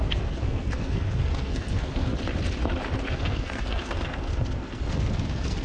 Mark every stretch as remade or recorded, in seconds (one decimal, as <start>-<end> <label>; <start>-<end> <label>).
0.0-2.1 remade; 2.1-3.1 recorded; 3.1-5.6 remade